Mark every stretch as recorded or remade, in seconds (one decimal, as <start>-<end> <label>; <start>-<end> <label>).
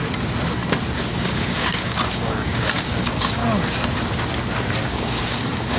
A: 0.0-1.0 recorded; 1.0-3.4 remade; 3.4-4.8 recorded; 4.8-5.8 remade